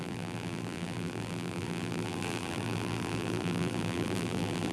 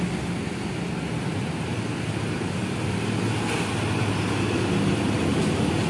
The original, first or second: second